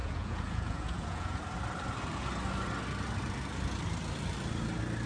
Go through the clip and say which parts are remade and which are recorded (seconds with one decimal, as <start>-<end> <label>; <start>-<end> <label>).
0.0-1.4 remade; 1.4-5.1 recorded